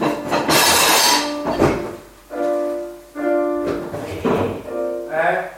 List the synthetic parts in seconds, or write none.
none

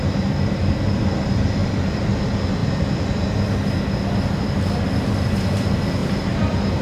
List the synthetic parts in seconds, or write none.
1.6-2.1 (vocoder, BigVGAN v2); 2.6-3.2; 6.0-6.8

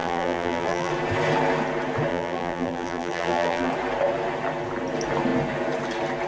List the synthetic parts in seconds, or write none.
0.0-0.9 (vocoder, BigVGAN v2); 2.1-3.7

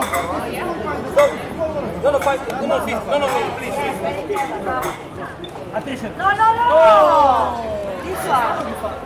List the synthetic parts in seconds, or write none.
3.3-4.6 (vocoder, BigVGAN v2); 5.9-6.8

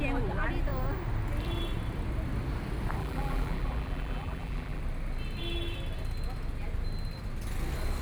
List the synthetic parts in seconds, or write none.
3.0-4.8 (vocoder, BigVGAN v2)

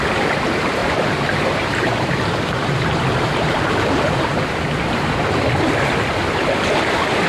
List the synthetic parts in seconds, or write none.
0.8-4.3 (vocoder, BigVGAN v2)